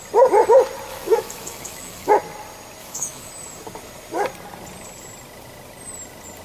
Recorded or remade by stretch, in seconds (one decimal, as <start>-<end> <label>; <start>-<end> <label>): 0.0-0.9 recorded; 0.9-2.1 remade; 2.1-2.8 recorded; 2.8-3.3 remade; 3.3-6.4 recorded